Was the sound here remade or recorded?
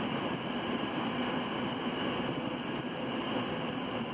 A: recorded